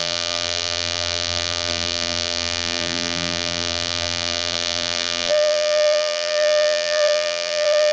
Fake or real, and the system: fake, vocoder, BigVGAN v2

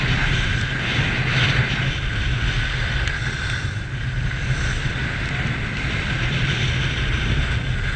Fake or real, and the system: real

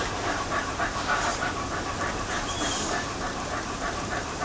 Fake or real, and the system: fake, vocoder, BigVGAN v2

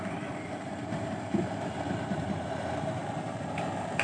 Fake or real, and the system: fake, vocoder, BigVGAN v2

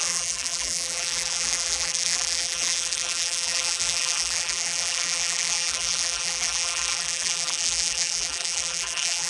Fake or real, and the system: fake, vocoder, BigVGAN v2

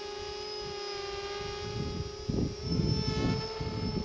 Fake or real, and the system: real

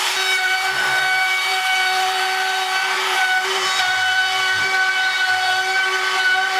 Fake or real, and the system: fake, vocoder, BigVGAN v2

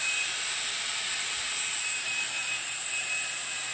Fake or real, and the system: fake, vocoder, BigVGAN v2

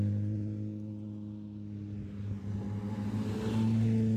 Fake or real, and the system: real